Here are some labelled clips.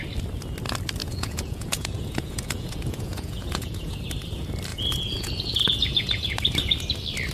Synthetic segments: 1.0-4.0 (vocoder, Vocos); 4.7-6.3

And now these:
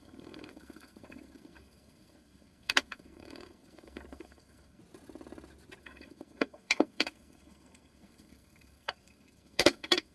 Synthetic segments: 0.0-4.8 (codec, SNAC); 5.8-10.1

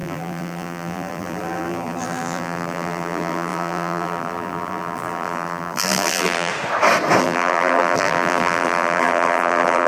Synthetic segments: 0.0-6.5 (vocoder, BigVGAN v2); 7.2-9.9

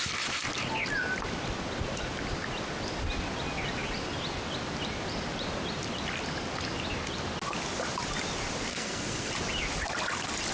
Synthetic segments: 8.7-9.3 (codec, SNAC)